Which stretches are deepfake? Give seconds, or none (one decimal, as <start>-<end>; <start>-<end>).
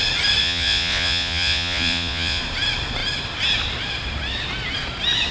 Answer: 0.4-2.4